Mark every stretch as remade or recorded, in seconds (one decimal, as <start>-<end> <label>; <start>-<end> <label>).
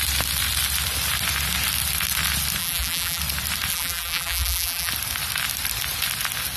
0.0-2.6 recorded; 2.6-3.2 remade; 3.2-3.7 recorded; 3.7-4.9 remade; 4.9-6.6 recorded